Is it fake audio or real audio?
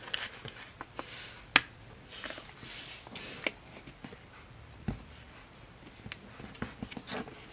real